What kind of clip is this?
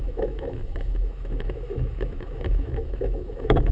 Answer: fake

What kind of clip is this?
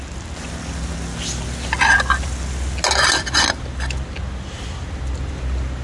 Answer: real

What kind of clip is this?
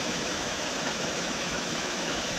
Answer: fake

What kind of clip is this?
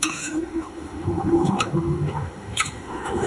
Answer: fake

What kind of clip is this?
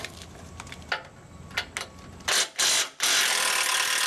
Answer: real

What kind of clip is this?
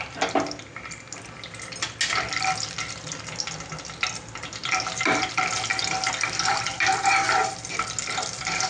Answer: real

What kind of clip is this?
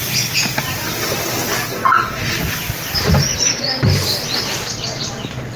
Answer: real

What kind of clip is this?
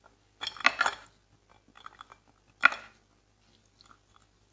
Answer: real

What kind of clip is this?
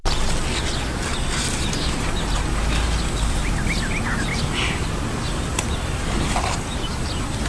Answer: real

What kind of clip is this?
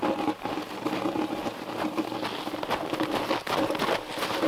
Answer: real